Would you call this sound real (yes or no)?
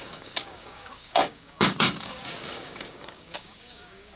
no